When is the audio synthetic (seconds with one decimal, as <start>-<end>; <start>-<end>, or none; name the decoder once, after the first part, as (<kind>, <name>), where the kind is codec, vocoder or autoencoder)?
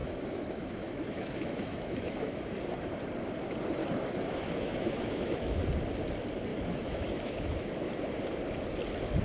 0.0-2.4 (autoencoder, DAC-VAE); 3.8-5.6; 6.5-7.7